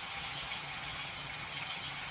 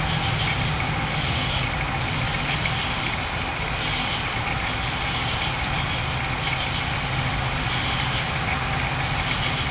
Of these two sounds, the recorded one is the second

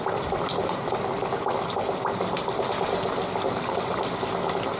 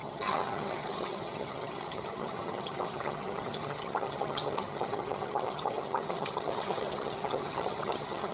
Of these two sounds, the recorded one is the first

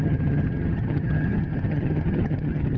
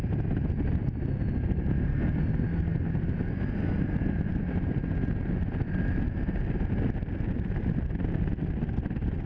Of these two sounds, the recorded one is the second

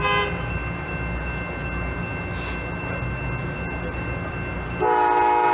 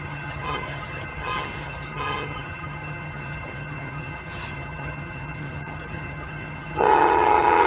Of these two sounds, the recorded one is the first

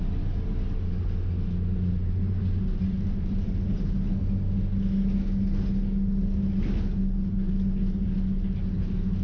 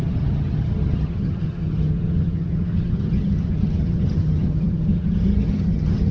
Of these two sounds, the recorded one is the first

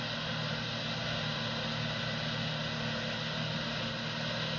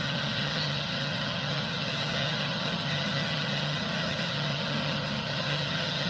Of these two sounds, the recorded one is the first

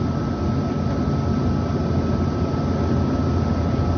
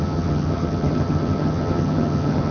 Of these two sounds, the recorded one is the first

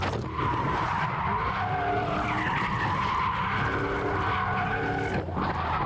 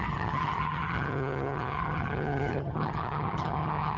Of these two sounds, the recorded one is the first